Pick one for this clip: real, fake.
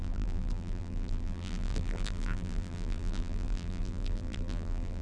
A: fake